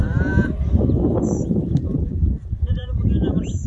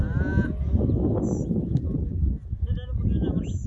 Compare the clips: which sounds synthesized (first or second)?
first